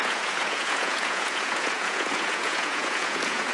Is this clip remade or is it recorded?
remade